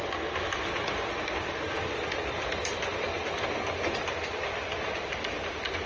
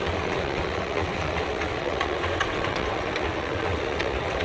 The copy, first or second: second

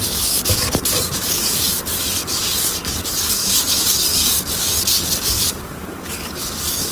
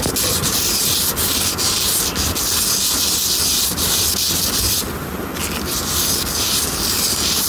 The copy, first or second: first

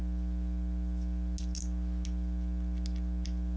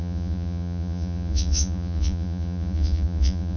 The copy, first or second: second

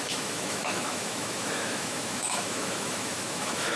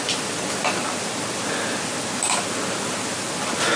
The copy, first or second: first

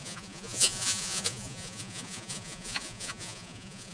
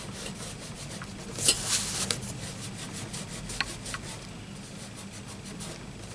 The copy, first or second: first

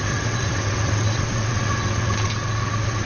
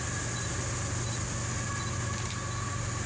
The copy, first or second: first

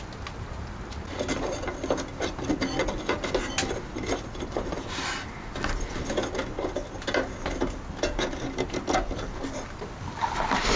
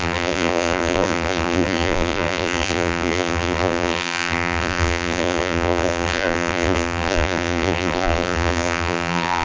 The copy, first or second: second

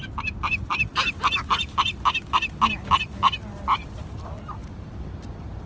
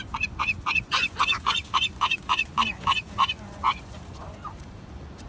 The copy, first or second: second